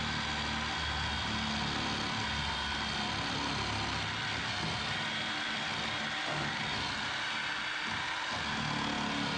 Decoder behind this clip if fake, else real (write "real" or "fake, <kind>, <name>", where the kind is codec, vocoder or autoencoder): real